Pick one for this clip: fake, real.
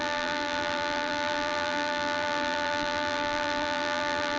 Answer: fake